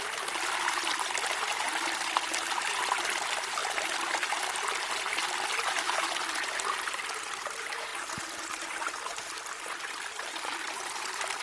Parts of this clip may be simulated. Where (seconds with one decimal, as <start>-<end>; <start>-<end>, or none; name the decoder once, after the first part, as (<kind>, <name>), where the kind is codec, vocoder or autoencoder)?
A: none